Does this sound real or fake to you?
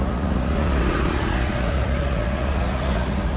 fake